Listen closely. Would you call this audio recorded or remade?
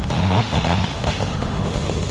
remade